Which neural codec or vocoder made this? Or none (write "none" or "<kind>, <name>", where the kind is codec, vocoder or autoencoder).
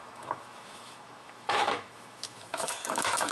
autoencoder, DAC-VAE